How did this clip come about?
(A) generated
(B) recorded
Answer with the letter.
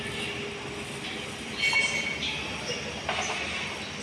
B